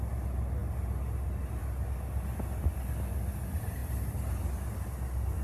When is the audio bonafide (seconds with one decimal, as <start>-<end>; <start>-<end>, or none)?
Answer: 0.0-5.4